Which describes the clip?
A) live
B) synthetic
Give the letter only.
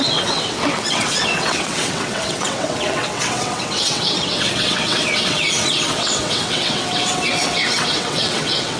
B